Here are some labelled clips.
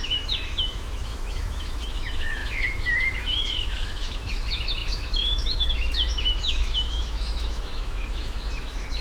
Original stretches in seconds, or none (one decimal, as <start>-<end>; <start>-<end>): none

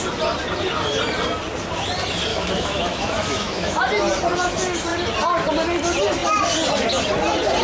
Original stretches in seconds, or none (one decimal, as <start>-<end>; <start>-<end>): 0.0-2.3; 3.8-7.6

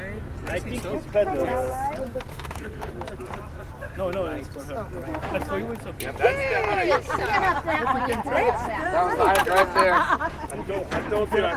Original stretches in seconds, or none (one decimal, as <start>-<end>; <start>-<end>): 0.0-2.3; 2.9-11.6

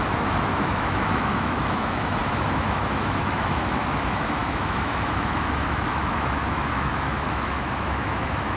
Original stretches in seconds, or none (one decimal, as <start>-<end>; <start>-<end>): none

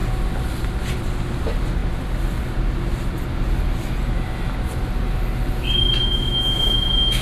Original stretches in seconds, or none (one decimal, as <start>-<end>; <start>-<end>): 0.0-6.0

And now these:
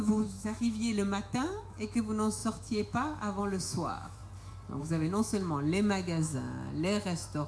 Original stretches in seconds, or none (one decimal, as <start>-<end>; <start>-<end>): 4.2-4.8